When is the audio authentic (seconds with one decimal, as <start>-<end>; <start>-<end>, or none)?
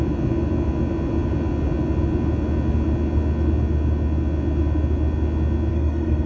0.0-5.7